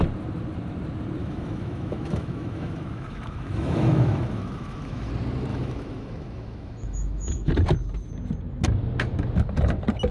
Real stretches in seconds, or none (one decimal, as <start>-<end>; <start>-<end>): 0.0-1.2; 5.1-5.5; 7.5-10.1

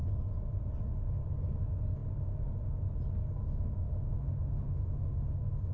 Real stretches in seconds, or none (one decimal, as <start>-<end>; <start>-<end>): 0.0-3.4

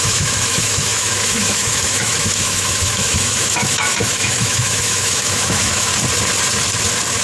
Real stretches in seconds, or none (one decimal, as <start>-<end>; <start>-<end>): 5.9-7.2